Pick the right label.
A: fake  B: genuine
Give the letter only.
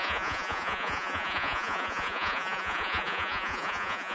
A